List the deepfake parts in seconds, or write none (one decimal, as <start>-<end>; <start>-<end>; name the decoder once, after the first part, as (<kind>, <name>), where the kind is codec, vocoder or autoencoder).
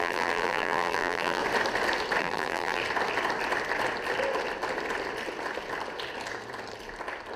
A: 0.0-1.4 (vocoder, BigVGAN v2); 2.2-2.8